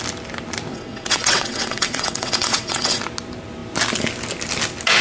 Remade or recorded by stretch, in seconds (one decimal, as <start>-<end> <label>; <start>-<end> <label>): 0.0-0.7 recorded; 0.7-3.0 remade; 3.0-5.0 recorded